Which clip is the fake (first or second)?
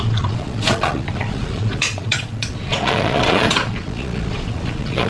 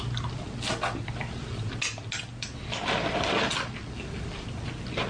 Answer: first